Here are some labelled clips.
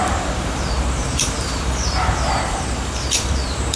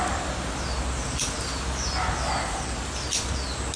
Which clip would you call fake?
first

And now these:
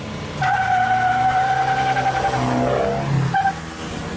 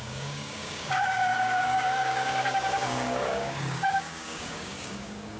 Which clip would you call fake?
second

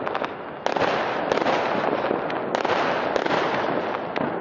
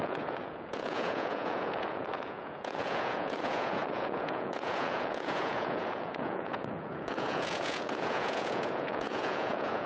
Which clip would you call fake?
second